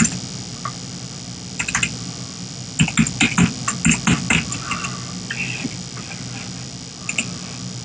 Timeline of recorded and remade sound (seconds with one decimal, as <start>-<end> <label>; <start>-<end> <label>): 0.0-7.8 recorded